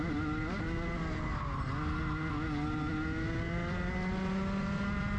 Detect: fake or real real